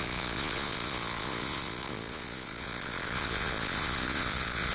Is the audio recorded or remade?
remade